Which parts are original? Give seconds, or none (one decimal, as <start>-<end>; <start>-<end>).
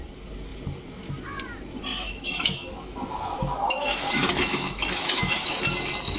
0.0-1.9; 5.6-6.2